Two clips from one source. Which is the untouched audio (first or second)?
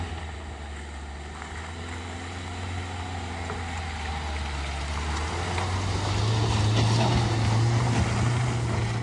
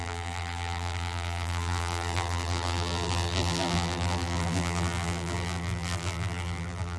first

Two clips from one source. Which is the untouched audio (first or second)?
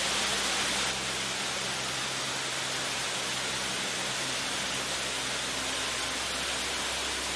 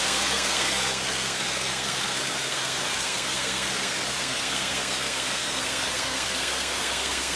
first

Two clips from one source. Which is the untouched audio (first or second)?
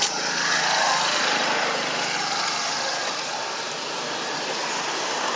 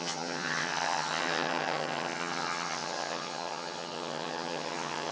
first